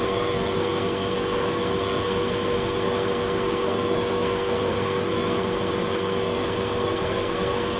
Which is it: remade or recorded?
remade